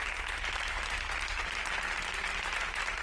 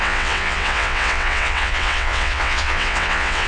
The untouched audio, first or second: first